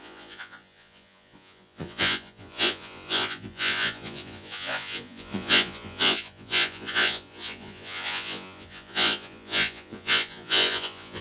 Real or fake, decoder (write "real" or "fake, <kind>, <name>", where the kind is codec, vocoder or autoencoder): fake, vocoder, Vocos